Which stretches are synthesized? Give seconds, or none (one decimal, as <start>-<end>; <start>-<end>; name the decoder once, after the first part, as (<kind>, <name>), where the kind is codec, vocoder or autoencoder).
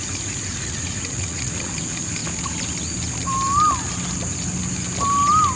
0.5-1.7 (vocoder, Vocos)